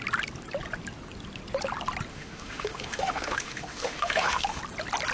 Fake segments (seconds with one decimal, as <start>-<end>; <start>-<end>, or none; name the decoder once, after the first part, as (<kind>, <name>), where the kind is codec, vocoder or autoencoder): 2.1-4.6 (autoencoder, DAC-VAE)